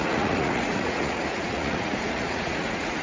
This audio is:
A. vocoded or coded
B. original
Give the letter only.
A